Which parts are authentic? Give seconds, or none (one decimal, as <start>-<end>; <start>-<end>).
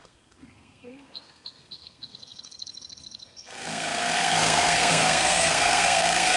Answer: none